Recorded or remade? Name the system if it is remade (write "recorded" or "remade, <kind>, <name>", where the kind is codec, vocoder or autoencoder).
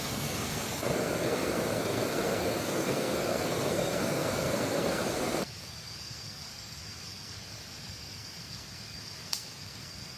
remade, codec, SNAC